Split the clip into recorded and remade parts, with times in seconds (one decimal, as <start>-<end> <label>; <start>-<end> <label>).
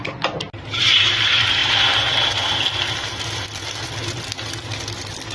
0.0-5.3 recorded